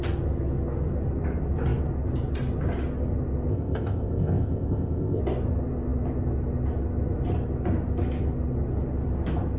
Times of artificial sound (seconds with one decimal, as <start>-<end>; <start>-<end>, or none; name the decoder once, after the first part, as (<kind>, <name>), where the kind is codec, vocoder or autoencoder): 3.5-5.2 (codec, ZipCodec)